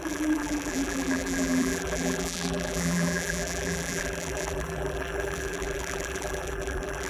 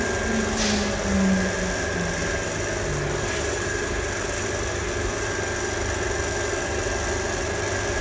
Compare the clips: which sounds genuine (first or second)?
second